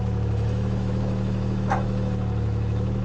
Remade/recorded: remade